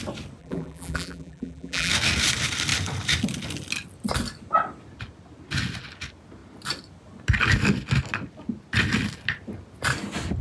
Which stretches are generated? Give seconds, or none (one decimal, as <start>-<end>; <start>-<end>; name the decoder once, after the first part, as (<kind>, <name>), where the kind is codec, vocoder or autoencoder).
0.4-1.9 (vocoder, BigVGAN v2)